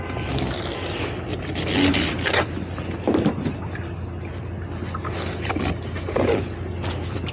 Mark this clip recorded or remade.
recorded